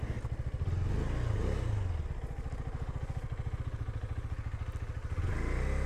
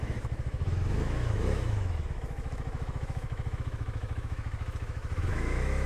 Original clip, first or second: first